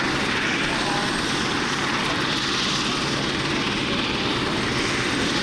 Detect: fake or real real